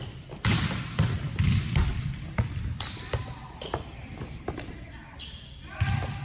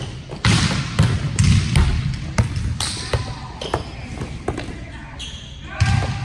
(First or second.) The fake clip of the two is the first